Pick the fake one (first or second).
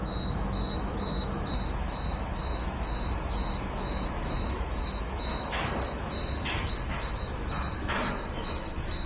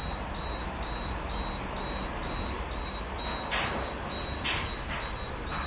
first